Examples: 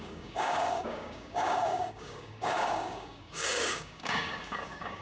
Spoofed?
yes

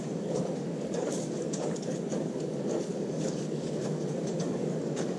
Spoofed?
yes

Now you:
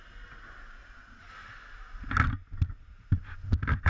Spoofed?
no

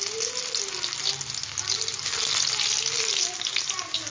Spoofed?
no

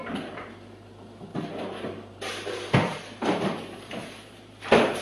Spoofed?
no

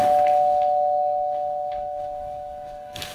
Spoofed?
yes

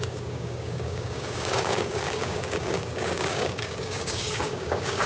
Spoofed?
yes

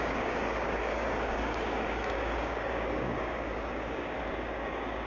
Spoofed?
yes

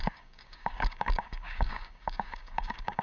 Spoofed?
yes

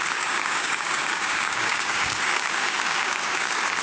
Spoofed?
yes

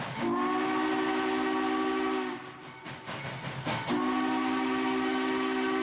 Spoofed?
no